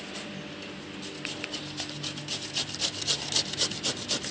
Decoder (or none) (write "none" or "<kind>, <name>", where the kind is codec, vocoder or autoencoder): none